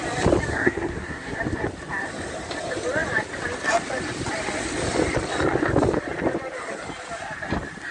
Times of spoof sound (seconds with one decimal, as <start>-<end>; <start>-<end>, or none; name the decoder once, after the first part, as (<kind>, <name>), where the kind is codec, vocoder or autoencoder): 0.5-1.4 (codec, SNAC)